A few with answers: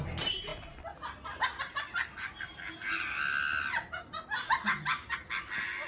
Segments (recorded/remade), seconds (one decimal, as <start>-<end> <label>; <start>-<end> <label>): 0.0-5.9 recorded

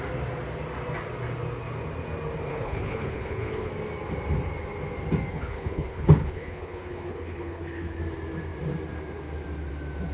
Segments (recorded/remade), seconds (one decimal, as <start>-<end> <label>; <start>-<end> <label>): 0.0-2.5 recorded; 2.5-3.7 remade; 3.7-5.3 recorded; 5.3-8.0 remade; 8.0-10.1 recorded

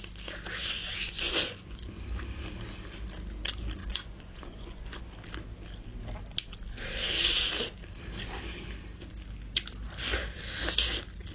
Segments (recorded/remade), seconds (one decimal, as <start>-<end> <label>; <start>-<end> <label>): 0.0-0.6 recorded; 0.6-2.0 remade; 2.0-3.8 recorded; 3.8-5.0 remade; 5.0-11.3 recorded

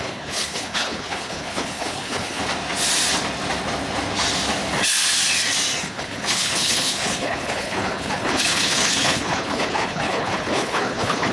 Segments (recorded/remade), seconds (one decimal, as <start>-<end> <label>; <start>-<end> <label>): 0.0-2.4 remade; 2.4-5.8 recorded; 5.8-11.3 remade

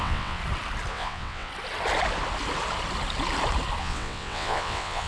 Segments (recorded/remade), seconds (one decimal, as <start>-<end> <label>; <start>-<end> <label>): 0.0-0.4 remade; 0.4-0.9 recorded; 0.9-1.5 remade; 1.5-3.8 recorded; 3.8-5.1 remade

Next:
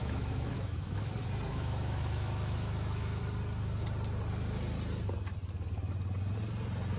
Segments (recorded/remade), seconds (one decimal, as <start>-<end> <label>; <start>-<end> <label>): 0.0-1.1 remade; 1.1-1.5 recorded; 1.5-3.2 remade; 3.2-7.0 recorded

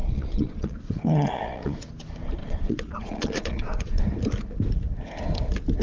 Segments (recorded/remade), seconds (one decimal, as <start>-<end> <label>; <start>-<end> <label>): 0.0-1.9 remade; 1.9-2.4 recorded; 2.4-4.0 remade; 4.0-5.8 recorded